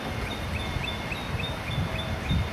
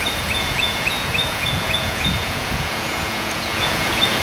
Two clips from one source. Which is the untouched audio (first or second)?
first